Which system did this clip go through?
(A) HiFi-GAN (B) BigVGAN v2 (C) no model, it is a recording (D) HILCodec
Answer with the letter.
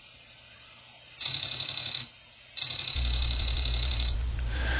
B